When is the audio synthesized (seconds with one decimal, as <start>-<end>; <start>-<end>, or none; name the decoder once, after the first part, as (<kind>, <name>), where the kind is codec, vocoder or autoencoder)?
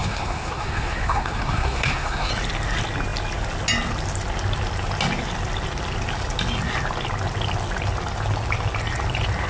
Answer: 0.0-2.3 (codec, SNAC)